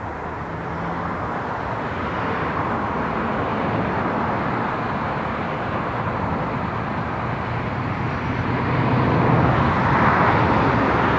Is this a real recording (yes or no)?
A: yes